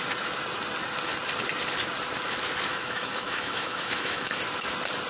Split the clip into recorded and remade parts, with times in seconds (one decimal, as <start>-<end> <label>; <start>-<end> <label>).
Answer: 0.0-2.7 recorded; 2.7-4.4 remade; 4.4-5.1 recorded

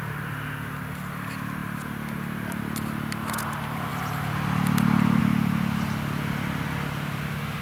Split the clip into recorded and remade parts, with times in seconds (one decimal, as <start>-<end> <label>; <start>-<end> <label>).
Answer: 0.0-7.6 recorded

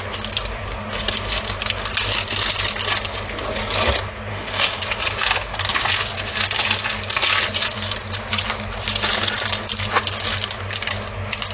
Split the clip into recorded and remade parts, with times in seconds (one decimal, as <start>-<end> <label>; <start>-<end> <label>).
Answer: 0.0-4.3 recorded; 4.3-4.8 remade; 4.8-11.5 recorded

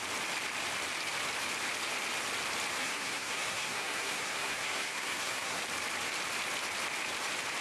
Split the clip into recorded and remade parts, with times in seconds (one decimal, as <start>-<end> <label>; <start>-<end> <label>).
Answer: 0.0-2.8 recorded; 2.8-5.6 remade; 5.6-7.6 recorded

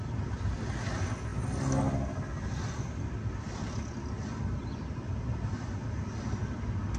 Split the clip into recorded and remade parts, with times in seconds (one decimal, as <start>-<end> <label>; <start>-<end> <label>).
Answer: 0.0-7.0 recorded